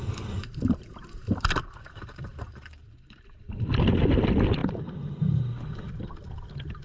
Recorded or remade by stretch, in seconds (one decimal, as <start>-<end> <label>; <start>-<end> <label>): 0.0-6.8 recorded